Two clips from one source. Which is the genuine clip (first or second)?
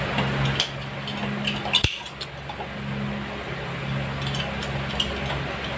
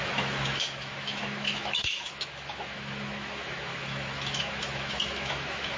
first